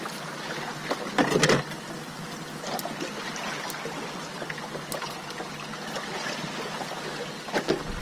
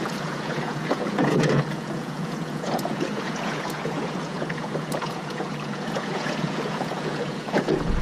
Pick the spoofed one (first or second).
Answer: second